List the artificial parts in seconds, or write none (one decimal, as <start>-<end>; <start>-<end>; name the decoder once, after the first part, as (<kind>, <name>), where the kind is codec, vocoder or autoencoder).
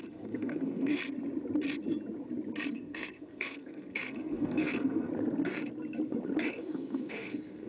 0.0-1.0 (codec, SNAC); 2.7-5.1; 6.5-7.7